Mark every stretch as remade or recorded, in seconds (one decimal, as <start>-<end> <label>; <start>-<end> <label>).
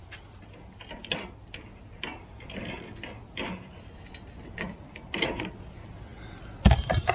0.0-7.1 recorded